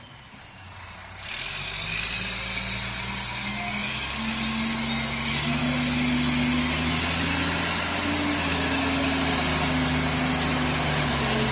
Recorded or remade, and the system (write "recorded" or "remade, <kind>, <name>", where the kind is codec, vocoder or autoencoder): recorded